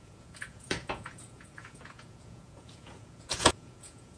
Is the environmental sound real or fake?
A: fake